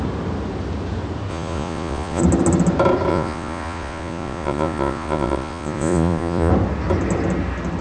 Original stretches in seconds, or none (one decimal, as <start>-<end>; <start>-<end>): 0.0-1.3; 2.2-3.1; 6.5-7.8

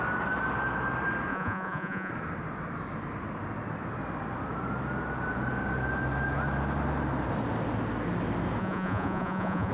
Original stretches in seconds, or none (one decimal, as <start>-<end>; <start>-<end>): 0.0-1.3; 2.1-8.6

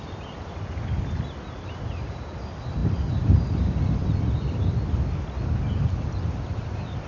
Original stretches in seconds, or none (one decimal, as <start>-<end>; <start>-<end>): 0.0-7.1

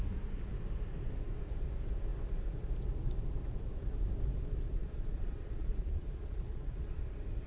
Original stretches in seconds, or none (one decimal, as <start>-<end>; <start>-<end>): 0.0-4.8; 7.0-7.5

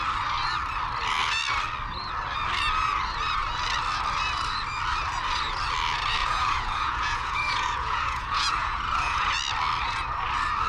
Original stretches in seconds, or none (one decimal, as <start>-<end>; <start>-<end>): 0.0-6.2; 9.3-10.7

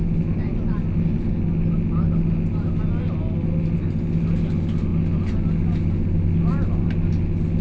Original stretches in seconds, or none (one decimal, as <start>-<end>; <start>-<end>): 0.0-7.6

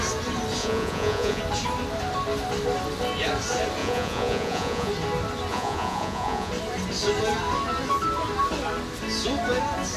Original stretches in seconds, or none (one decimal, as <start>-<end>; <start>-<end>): 0.0-0.6; 1.4-3.8; 4.9-5.5; 6.5-10.0